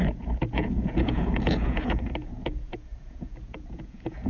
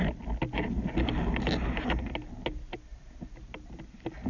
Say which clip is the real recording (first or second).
second